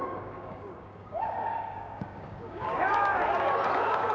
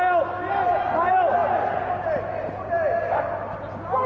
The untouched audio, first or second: second